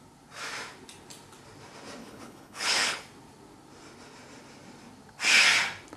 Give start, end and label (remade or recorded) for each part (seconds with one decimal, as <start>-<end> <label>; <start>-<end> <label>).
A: 0.0-2.0 recorded; 2.0-3.0 remade; 3.0-6.0 recorded